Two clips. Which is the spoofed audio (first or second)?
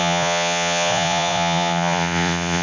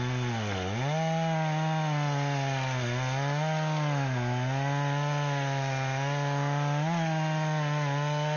first